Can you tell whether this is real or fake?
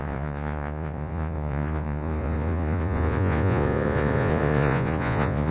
fake